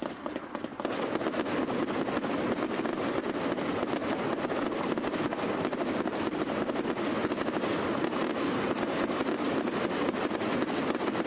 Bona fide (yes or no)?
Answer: yes